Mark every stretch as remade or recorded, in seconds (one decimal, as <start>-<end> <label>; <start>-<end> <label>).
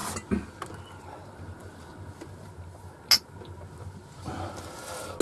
0.0-5.2 recorded